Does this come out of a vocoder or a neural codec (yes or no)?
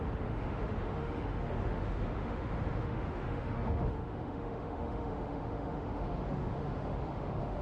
yes